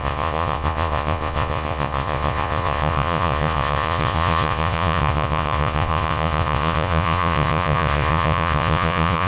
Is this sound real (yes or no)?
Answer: no